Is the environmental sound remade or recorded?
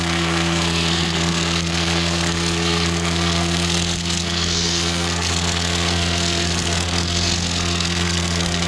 remade